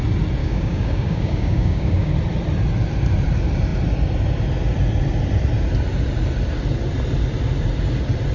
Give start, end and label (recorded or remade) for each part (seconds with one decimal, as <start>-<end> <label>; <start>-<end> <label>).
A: 0.0-0.4 recorded; 0.4-2.1 remade; 2.1-8.3 recorded